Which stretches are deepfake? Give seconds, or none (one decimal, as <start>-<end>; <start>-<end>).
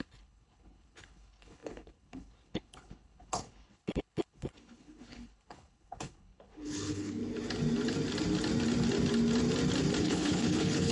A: 0.0-7.2; 10.0-10.9